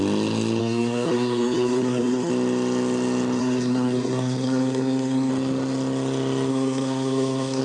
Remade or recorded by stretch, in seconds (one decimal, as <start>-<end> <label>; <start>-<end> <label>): 0.0-0.6 recorded; 0.6-2.3 remade; 2.3-3.4 recorded; 3.4-5.3 remade; 5.3-6.5 recorded; 6.5-7.6 remade